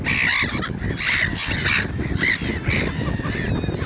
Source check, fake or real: real